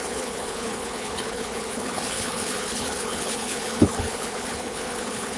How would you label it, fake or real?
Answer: fake